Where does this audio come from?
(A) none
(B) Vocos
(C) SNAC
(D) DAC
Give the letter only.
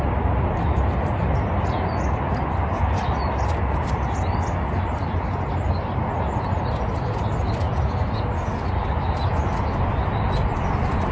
A